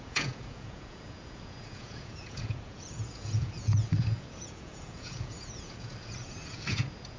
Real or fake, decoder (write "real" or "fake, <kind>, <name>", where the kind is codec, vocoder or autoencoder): fake, vocoder, Vocos